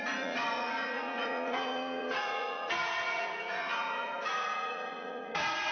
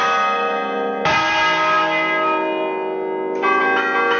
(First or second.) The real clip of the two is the second